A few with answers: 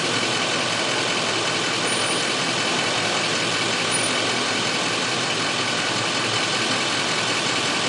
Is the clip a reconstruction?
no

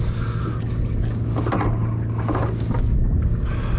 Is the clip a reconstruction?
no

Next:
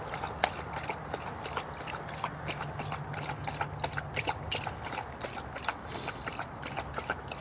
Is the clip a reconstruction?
no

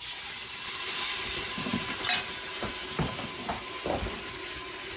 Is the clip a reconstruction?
no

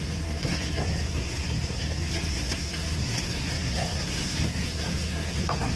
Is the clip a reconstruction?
yes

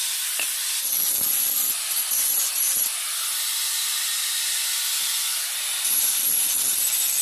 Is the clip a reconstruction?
no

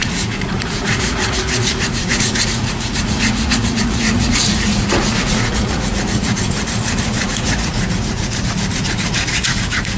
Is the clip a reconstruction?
yes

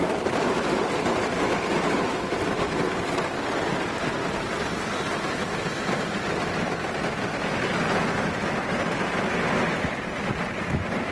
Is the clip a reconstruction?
no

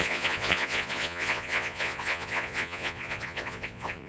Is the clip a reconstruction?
yes